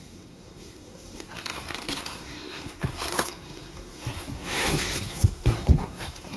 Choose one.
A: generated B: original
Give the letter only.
A